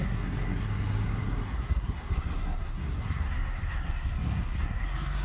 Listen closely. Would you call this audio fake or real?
fake